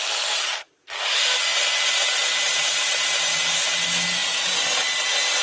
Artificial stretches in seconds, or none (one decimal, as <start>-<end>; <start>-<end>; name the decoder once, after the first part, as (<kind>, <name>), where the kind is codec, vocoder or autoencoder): none